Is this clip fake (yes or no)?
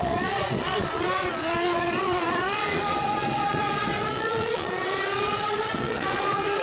yes